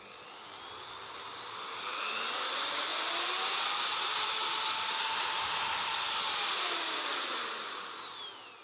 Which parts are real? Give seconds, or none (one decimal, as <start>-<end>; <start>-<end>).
0.0-8.6